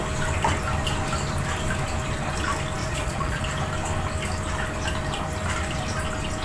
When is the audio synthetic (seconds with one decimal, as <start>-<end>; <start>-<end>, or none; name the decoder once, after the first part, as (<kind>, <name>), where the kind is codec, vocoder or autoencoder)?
2.8-3.4 (vocoder, Vocos)